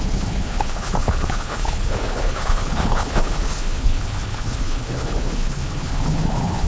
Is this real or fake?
fake